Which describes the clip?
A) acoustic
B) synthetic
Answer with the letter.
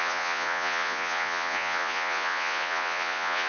B